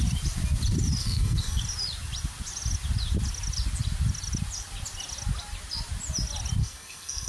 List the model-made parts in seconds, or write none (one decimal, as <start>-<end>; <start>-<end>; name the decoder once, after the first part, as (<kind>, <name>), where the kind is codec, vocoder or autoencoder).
1.0-1.6 (codec, SNAC); 6.6-7.3